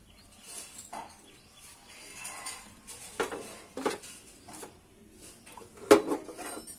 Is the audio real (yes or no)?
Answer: yes